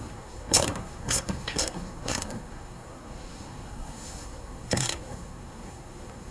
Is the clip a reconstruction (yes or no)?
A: yes